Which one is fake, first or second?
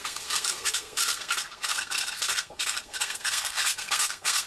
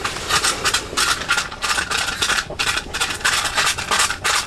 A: first